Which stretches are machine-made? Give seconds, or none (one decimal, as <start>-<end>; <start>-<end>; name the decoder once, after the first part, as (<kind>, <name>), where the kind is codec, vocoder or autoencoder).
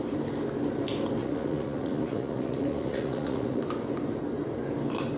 1.2-3.6 (vocoder, Vocos)